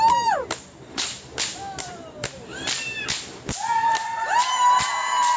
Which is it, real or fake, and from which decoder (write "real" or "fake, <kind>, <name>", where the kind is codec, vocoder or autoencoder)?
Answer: fake, vocoder, BigVGAN v2